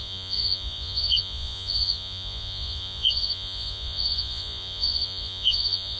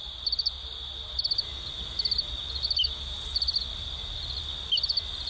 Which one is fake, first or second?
first